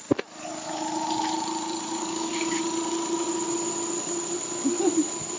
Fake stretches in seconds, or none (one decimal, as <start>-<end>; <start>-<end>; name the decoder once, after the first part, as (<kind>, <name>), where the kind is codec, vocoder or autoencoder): 2.0-2.6 (codec, DAC)